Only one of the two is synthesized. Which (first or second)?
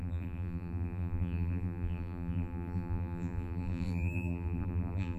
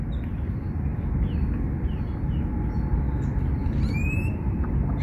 first